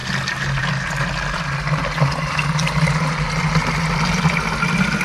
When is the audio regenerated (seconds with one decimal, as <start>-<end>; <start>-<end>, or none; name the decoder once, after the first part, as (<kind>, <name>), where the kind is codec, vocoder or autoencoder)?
none